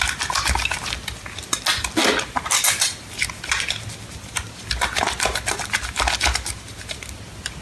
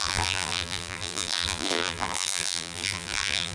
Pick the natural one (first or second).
first